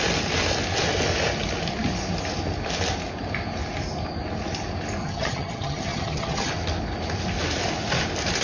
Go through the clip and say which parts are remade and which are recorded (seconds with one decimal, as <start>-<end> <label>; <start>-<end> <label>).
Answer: 0.0-5.0 recorded; 5.0-6.5 remade; 6.5-8.4 recorded